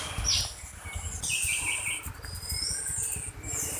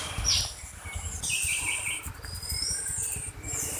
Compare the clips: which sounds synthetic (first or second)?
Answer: second